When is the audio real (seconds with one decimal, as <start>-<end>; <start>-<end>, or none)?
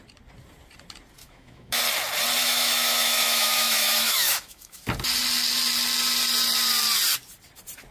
0.0-1.2; 1.8-2.4; 4.8-7.9